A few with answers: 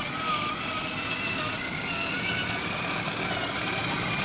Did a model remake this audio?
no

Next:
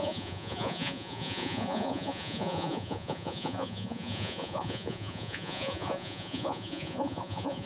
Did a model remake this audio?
yes